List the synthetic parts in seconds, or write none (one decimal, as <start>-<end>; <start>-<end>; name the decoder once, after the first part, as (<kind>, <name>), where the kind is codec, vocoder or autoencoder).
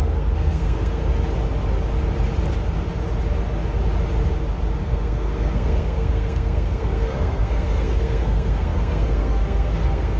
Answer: 0.0-1.0 (codec, SNAC); 4.8-10.2